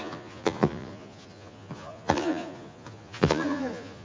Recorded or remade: remade